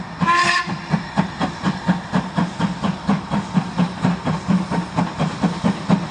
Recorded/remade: recorded